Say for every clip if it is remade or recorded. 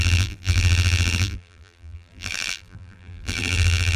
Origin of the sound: remade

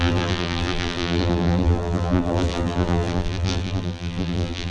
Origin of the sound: remade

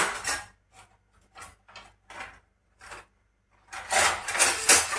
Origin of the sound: recorded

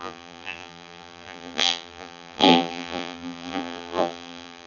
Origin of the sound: remade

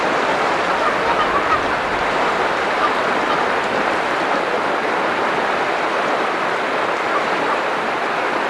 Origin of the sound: remade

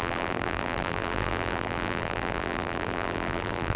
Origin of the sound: remade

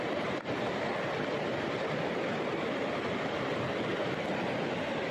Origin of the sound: recorded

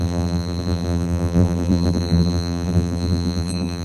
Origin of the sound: remade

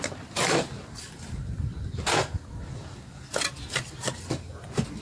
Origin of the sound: recorded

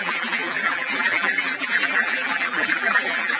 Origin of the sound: remade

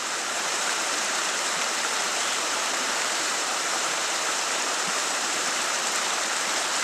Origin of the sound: remade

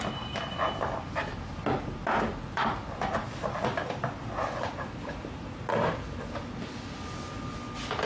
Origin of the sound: recorded